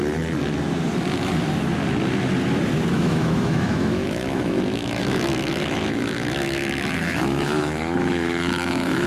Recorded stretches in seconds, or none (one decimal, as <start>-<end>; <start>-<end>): 0.0-2.9

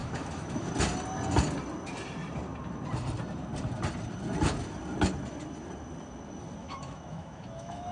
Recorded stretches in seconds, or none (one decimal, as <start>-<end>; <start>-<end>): 0.7-6.6

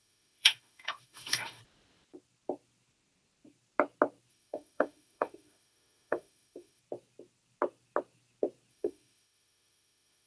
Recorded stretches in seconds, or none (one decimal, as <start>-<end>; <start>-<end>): 1.6-4.3; 6.8-8.7

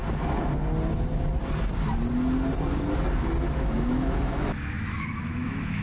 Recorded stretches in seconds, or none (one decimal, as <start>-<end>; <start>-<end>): 0.0-3.5